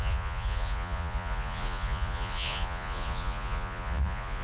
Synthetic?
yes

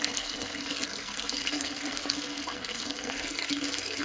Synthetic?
yes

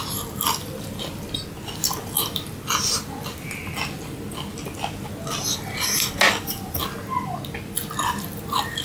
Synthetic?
no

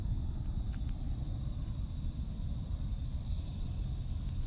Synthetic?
no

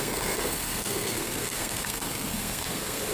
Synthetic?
yes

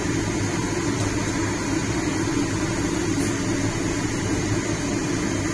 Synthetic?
no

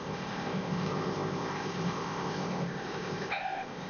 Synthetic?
yes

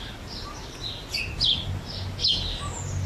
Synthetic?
no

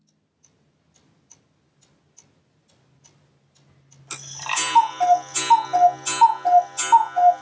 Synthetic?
no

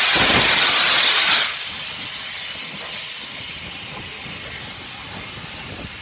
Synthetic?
no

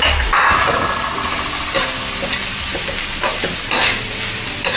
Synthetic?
no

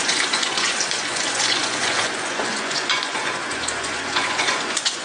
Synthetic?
yes